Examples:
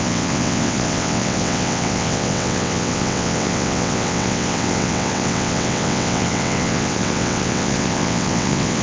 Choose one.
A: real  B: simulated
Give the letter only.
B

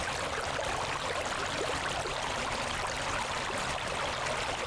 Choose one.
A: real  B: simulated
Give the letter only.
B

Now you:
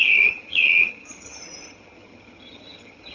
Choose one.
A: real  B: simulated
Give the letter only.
B